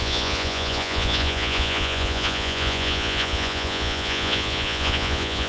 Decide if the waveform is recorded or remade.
remade